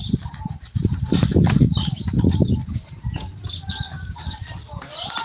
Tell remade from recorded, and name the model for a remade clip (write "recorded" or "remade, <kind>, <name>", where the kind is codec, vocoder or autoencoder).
remade, vocoder, BigVGAN v2